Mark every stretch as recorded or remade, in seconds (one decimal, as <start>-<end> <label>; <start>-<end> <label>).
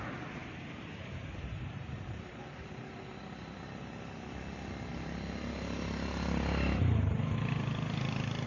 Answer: 0.0-0.4 recorded; 0.4-2.4 remade; 2.4-8.5 recorded